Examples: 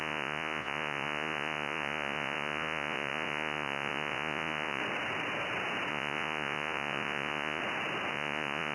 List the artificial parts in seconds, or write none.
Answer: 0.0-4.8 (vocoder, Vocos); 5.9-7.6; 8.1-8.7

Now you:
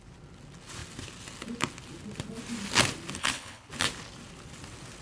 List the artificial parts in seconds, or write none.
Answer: 3.2-3.7 (codec, HILCodec)

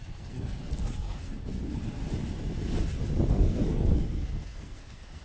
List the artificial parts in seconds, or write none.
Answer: 0.0-2.0 (codec, SNAC); 3.3-5.2

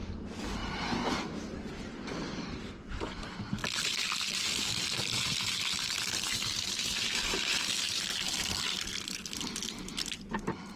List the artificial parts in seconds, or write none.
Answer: none